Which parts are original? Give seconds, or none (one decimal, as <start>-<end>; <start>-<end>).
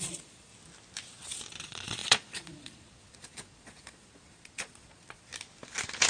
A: 0.5-1.6; 5.3-6.1